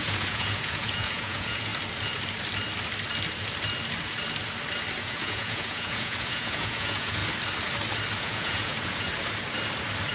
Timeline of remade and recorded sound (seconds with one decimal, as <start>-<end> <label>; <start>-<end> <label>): 0.0-1.7 remade; 1.7-5.0 recorded; 5.0-7.2 remade; 7.2-8.2 recorded; 8.2-9.1 remade; 9.1-10.1 recorded